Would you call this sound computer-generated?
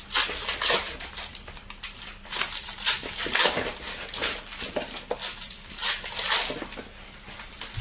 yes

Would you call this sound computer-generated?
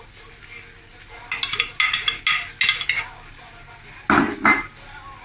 no